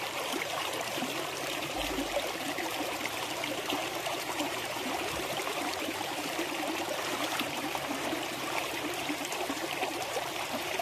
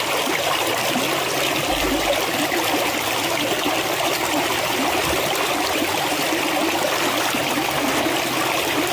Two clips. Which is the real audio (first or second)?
second